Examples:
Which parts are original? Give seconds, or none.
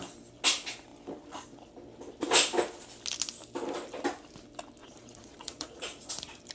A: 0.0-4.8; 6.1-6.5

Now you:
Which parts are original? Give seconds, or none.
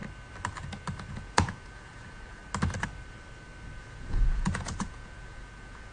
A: 0.0-1.1; 2.4-3.8